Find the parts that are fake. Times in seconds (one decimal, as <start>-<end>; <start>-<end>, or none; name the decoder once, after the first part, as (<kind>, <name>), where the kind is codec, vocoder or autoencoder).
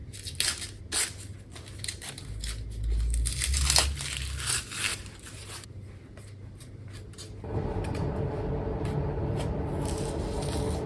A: 4.9-8.3 (vocoder, BigVGAN v2)